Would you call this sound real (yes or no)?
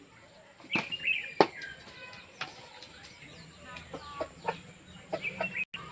yes